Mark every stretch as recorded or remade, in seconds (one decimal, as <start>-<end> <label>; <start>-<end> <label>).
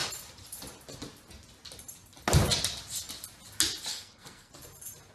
0.0-3.9 recorded; 3.9-4.5 remade; 4.5-5.1 recorded